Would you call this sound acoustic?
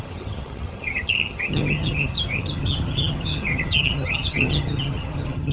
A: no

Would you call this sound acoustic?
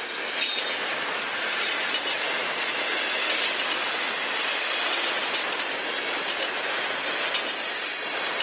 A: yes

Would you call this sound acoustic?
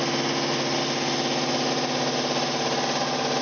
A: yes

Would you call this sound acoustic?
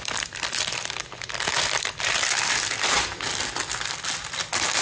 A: yes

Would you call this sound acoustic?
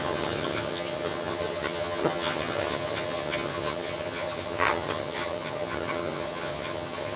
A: no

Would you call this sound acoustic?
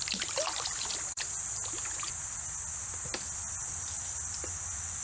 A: yes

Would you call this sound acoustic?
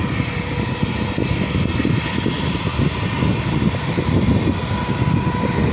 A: yes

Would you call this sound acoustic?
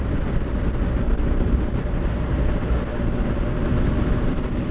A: yes